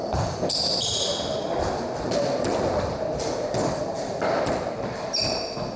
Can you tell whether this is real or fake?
fake